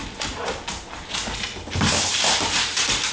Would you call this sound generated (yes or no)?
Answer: no